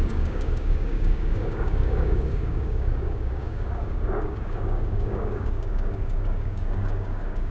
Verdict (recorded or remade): remade